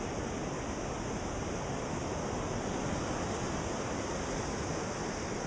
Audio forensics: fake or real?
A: real